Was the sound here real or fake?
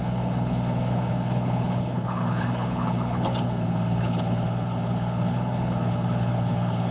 fake